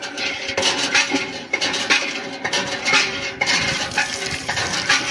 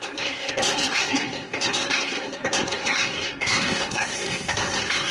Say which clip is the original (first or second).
first